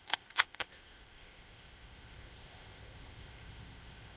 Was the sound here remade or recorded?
remade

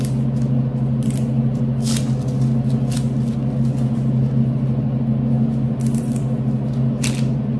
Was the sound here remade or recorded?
recorded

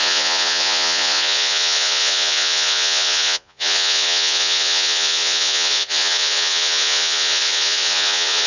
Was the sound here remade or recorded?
remade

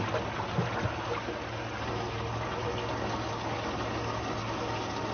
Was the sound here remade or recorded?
recorded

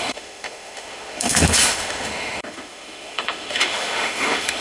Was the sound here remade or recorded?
remade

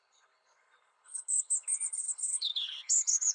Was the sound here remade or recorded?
remade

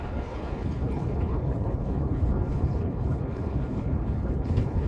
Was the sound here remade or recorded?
remade